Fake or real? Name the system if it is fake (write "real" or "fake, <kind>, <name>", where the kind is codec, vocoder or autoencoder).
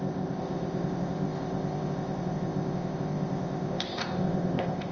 fake, codec, ZipCodec